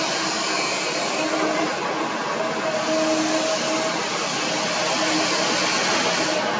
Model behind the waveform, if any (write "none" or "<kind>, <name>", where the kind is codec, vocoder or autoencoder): none